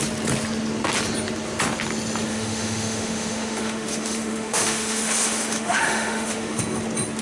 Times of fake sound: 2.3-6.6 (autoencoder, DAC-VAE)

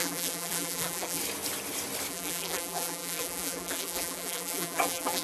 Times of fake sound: 0.0-1.2 (vocoder, BigVGAN v2); 2.1-5.2

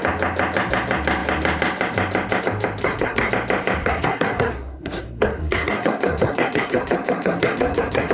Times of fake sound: 2.8-3.3 (codec, SNAC); 3.8-8.1

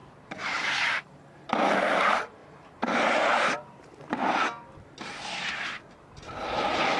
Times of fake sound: 0.0-1.0 (vocoder, BigVGAN v2); 2.4-4.3